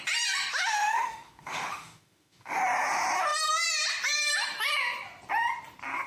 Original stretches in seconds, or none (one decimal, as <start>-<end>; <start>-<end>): 0.0-0.5; 2.6-6.1